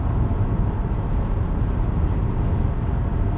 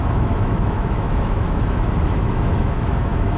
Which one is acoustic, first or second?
first